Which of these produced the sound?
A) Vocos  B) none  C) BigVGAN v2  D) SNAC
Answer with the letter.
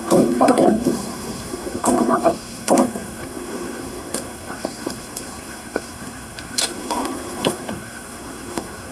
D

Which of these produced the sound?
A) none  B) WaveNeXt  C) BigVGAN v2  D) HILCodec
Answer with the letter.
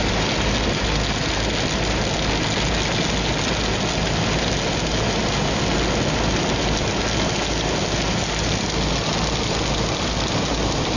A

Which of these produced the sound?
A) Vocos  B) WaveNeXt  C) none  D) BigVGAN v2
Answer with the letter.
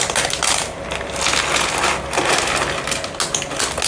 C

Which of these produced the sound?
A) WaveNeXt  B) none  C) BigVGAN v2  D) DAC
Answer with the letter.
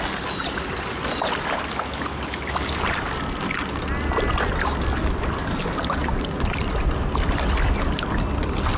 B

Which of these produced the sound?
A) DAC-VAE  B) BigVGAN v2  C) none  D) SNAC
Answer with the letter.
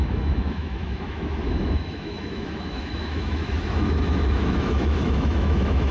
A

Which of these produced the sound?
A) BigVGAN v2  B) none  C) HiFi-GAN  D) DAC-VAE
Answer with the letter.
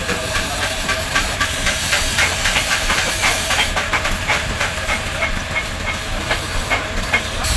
A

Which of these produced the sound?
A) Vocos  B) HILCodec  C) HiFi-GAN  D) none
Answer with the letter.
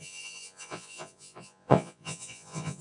A